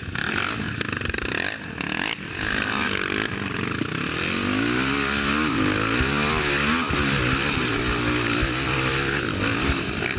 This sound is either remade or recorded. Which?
recorded